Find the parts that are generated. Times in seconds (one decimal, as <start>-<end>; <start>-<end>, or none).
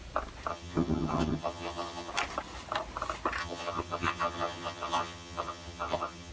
0.5-2.1; 3.4-6.3